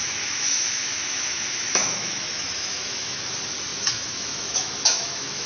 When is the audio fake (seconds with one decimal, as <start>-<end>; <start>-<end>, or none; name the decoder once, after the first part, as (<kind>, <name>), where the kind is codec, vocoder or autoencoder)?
0.0-3.3 (autoencoder, DAC-VAE); 3.7-5.5